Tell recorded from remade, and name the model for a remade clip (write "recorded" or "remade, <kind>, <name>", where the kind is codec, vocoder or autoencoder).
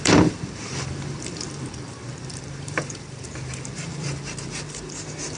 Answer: remade, vocoder, BigVGAN v2